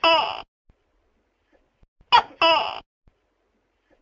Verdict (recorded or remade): recorded